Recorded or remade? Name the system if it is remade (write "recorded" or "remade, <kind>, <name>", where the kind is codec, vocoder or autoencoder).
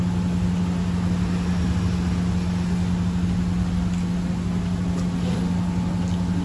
recorded